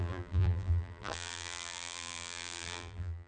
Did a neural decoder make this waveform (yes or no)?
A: yes